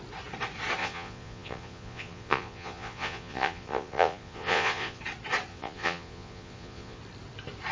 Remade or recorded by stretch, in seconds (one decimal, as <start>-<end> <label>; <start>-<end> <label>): 0.0-0.8 recorded; 0.8-5.0 remade; 5.0-5.5 recorded; 5.5-7.0 remade; 7.0-7.7 recorded